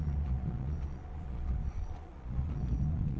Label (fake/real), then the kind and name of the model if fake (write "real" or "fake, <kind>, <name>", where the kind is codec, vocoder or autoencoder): fake, vocoder, Vocos